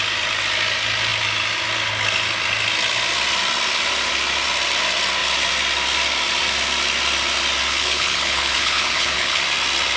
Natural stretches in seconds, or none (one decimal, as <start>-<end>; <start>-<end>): 0.0-7.7; 9.4-10.0